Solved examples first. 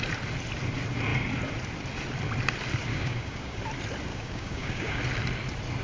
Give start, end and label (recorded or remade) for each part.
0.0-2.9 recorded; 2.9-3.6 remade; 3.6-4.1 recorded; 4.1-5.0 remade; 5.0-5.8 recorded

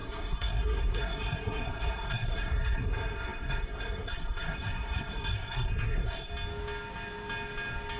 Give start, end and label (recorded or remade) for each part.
0.0-6.3 remade; 6.3-8.0 recorded

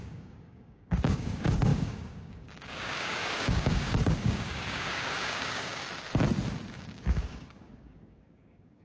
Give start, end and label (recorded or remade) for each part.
0.0-5.8 remade; 5.8-6.7 recorded; 6.7-8.8 remade

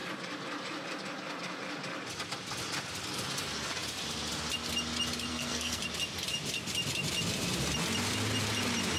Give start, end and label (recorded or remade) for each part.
0.0-5.3 recorded; 5.3-5.8 remade; 5.8-9.0 recorded

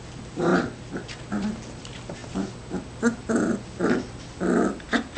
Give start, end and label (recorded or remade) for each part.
0.0-5.2 recorded

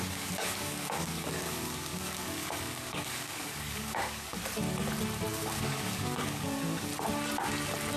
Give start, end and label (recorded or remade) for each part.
0.0-4.4 remade; 4.4-5.3 recorded; 5.3-6.9 remade; 6.9-8.0 recorded

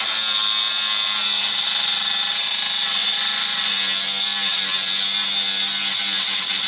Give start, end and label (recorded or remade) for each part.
0.0-3.0 recorded; 3.0-3.7 remade; 3.7-6.7 recorded